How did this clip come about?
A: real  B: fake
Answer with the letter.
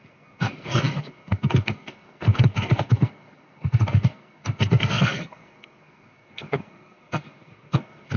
B